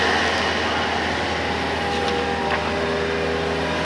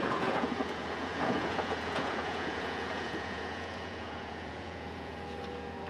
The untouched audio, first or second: first